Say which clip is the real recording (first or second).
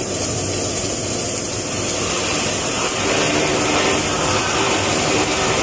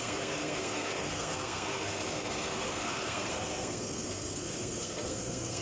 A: first